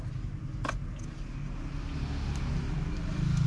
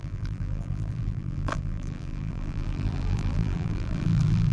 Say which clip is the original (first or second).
first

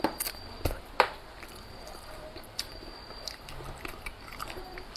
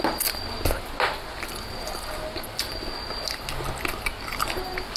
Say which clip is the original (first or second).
second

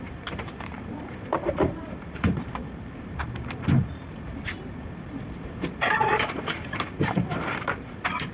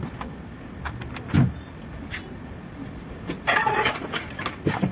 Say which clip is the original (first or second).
second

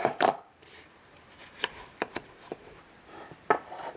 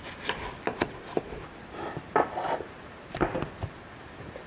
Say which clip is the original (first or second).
second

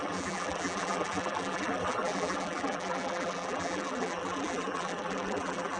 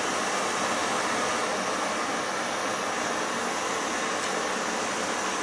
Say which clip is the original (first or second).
second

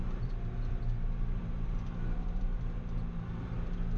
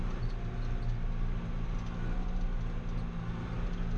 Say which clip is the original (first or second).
second